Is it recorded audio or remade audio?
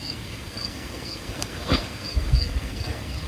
remade